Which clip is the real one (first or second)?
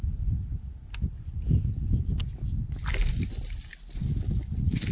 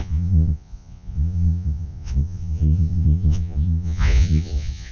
first